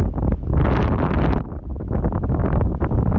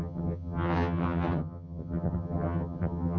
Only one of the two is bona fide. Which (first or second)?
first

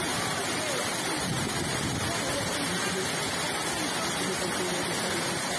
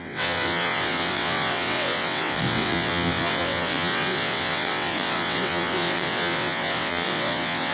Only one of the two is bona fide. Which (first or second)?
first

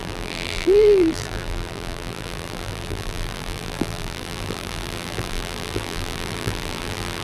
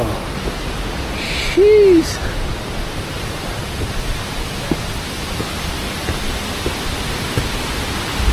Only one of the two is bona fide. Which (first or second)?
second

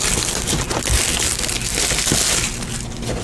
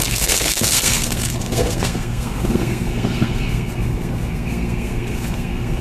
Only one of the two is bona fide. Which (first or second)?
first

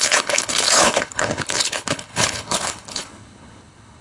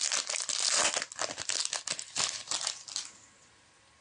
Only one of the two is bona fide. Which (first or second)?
second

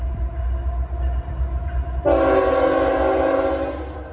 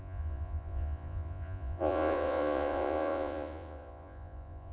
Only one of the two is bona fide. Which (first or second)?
first